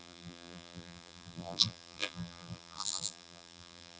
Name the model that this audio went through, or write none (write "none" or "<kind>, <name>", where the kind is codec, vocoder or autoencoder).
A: vocoder, BigVGAN v2